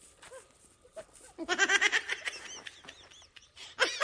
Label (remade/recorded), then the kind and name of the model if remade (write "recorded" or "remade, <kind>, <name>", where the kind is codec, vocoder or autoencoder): recorded